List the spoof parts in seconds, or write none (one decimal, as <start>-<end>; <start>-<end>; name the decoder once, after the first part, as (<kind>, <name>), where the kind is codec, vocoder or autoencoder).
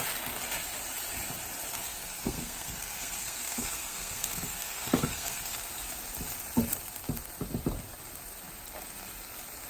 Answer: 1.7-5.7 (codec, SNAC)